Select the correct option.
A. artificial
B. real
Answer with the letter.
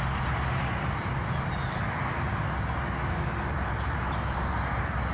B